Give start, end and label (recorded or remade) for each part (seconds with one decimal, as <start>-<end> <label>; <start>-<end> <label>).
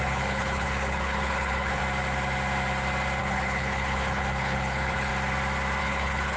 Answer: 0.0-1.8 remade; 1.8-3.2 recorded; 3.2-5.1 remade; 5.1-5.8 recorded; 5.8-6.4 remade